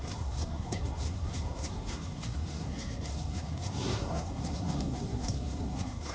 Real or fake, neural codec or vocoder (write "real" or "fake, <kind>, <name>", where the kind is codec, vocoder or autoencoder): fake, codec, SNAC